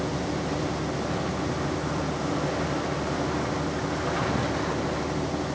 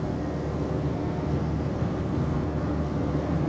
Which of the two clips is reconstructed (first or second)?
second